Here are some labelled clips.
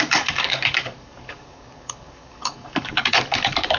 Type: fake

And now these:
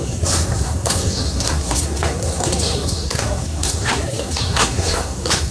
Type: fake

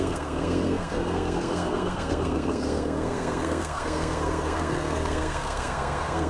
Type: fake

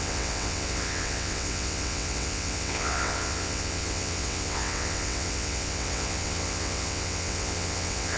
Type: fake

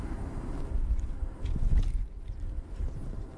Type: real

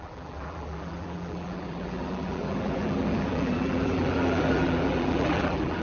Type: fake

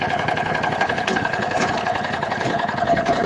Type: fake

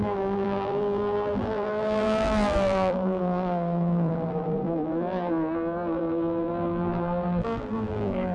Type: fake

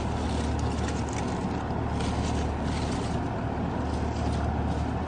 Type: real